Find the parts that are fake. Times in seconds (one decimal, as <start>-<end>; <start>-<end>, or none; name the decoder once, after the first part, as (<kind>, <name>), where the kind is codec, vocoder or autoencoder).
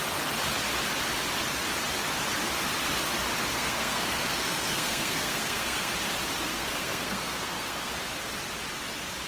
3.5-5.9 (codec, SNAC); 6.5-7.9